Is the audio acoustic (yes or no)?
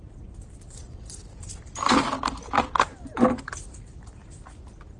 yes